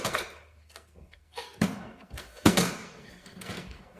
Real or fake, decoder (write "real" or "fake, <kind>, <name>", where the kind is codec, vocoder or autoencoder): fake, codec, SNAC